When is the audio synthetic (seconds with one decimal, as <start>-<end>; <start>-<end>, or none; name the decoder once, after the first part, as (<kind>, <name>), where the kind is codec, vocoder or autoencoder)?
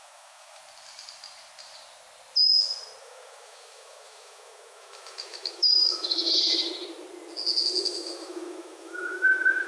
0.0-0.6 (autoencoder, DAC-VAE); 3.0-6.2; 7.8-9.7